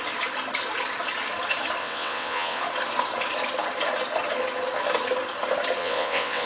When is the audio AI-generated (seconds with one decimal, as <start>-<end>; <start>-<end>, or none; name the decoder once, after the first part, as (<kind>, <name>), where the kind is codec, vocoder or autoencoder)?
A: 1.8-2.6 (vocoder, WaveNeXt); 5.8-6.5